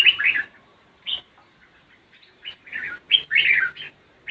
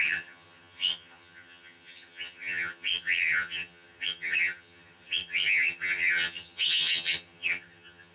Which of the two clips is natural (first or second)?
first